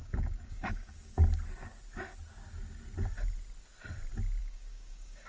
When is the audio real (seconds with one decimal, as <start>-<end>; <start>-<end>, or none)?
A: 1.2-4.4